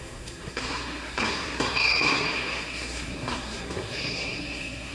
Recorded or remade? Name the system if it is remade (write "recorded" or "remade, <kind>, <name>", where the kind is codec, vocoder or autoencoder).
remade, codec, SNAC